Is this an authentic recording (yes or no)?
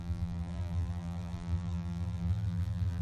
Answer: no